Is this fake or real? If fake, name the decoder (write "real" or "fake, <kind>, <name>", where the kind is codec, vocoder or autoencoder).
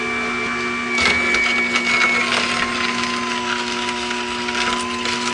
real